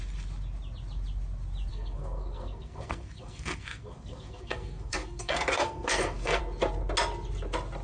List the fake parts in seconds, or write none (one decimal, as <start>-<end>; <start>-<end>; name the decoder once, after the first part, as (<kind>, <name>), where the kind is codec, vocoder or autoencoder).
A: 1.7-6.4 (codec, SNAC)